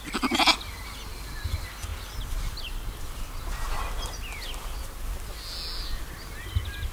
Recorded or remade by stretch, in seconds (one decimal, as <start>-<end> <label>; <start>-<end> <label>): 0.0-6.9 recorded